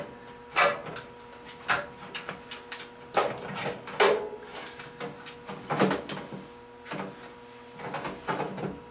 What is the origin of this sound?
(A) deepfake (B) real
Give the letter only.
B